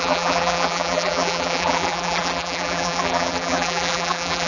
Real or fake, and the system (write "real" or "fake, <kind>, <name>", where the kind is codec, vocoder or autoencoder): fake, vocoder, BigVGAN v2